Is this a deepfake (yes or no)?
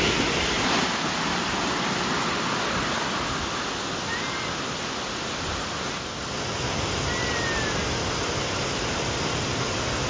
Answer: no